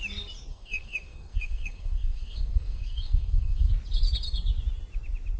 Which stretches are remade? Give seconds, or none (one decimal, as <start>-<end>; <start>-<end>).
0.5-3.7